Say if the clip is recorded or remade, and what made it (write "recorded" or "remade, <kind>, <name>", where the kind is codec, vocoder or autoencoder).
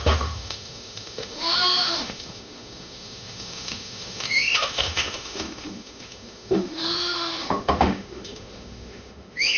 remade, autoencoder, DAC-VAE